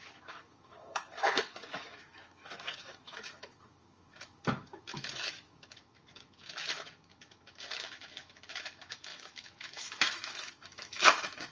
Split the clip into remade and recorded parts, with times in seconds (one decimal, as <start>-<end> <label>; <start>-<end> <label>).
0.0-11.5 remade